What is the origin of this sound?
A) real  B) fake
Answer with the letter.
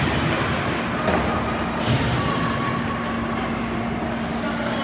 A